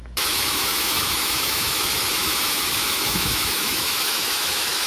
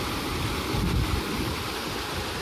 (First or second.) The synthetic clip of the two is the first